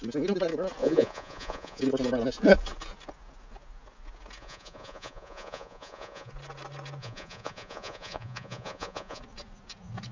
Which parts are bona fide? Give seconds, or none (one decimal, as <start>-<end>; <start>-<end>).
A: 0.0-0.8; 1.8-4.4; 6.3-7.0; 9.2-10.1